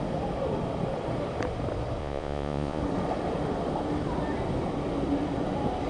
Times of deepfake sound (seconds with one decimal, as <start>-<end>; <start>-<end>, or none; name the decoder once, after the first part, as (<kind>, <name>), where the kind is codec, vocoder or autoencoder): 2.0-2.8 (vocoder, Vocos)